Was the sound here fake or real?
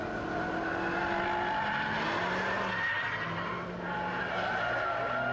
real